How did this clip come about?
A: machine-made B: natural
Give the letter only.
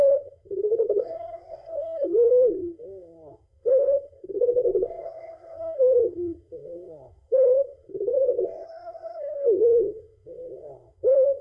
A